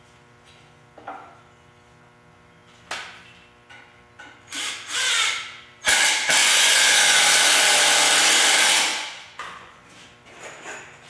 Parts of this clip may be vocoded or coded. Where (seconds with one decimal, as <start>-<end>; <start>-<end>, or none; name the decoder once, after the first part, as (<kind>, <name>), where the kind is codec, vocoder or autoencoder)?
6.4-7.2 (vocoder, Vocos); 8.9-9.9